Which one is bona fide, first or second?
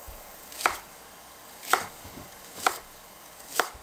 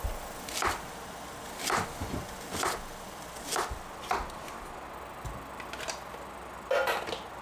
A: second